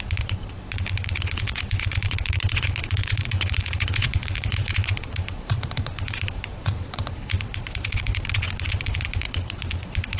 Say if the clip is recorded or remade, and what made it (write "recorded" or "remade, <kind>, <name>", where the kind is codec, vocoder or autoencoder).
remade, vocoder, Vocos